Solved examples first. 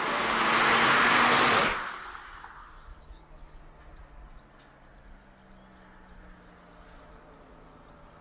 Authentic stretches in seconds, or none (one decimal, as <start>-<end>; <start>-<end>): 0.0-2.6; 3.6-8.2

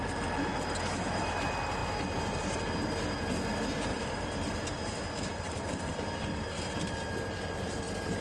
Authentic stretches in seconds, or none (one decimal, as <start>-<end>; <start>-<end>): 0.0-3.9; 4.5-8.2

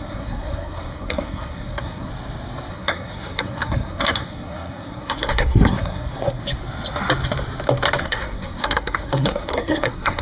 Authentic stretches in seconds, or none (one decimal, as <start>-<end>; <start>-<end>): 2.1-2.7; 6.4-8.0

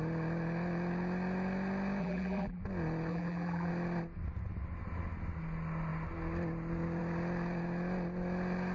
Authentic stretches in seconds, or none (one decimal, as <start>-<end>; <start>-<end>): 0.0-2.0; 2.6-3.1; 3.7-8.7

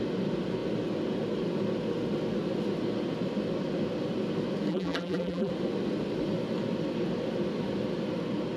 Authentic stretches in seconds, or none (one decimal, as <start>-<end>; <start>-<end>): 0.0-4.7; 5.5-8.6